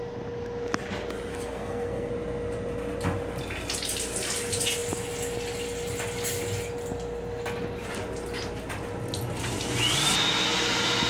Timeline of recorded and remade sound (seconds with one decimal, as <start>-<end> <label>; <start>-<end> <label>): 0.0-1.3 recorded; 1.3-2.1 remade; 2.1-11.1 recorded